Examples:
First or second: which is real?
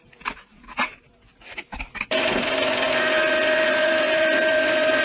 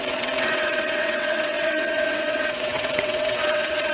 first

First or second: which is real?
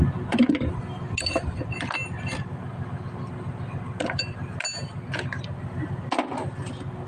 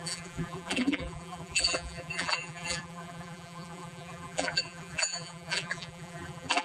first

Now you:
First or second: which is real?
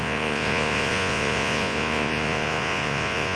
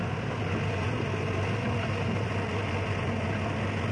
second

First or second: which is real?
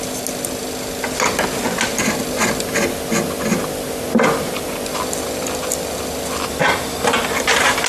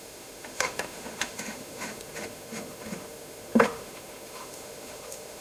first